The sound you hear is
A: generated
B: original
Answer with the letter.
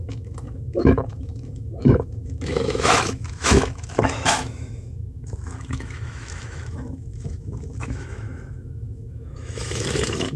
A